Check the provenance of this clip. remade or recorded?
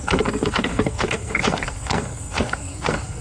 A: remade